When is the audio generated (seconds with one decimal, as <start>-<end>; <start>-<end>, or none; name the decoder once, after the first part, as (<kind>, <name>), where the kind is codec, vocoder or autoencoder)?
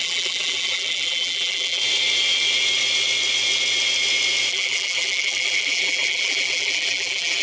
0.0-1.8 (vocoder, BigVGAN v2); 4.5-7.4